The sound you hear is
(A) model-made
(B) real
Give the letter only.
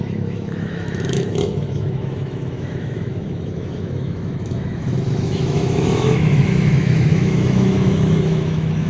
A